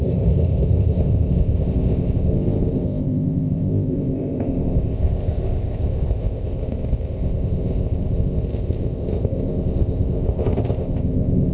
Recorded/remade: remade